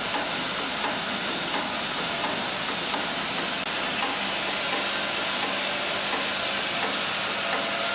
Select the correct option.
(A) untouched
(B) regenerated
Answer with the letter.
A